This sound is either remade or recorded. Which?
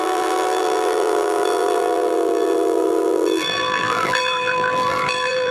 remade